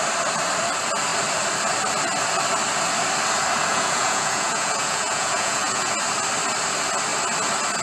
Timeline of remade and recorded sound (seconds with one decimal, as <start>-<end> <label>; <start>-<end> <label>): 0.0-3.7 recorded; 3.7-5.9 remade; 5.9-7.8 recorded